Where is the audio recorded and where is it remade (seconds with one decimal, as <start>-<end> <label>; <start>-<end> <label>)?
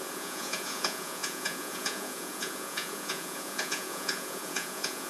0.0-5.1 remade